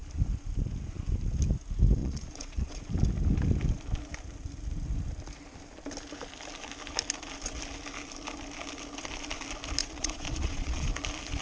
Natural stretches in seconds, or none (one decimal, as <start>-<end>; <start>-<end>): 0.0-2.0; 2.8-9.8; 10.9-11.4